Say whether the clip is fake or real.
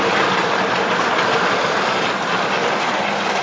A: real